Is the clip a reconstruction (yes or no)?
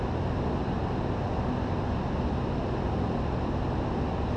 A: no